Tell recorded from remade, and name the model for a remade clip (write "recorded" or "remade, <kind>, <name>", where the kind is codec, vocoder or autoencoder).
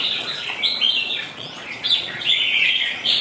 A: remade, vocoder, Vocos